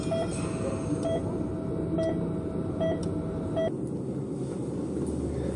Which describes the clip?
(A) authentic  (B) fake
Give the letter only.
A